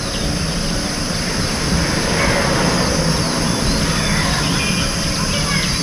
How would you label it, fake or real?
real